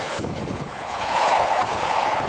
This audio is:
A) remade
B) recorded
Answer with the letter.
A